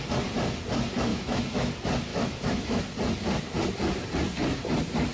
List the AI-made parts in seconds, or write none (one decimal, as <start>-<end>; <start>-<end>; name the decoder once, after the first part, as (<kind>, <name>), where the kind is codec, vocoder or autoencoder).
1.1-1.7 (autoencoder, DAC-VAE); 2.1-2.8